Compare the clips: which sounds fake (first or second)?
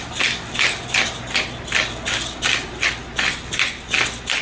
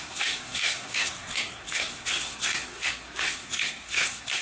second